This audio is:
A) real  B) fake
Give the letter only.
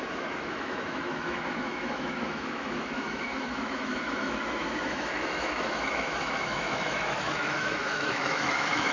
B